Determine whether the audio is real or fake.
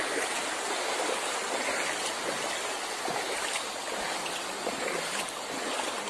real